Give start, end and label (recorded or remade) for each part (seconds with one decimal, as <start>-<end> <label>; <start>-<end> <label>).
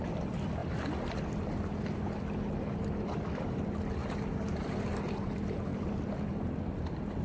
0.0-7.2 recorded